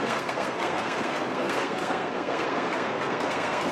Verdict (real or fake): fake